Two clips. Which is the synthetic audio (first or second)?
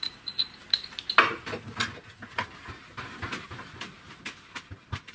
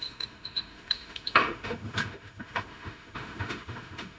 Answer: second